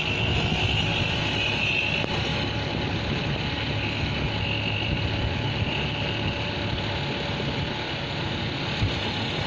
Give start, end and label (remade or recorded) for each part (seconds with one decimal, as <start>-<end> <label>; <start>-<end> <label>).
0.0-9.5 recorded